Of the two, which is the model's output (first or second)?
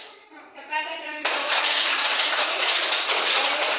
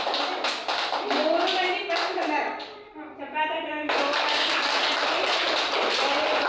first